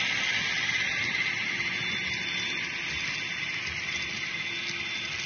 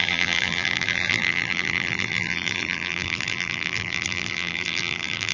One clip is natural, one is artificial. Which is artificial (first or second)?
second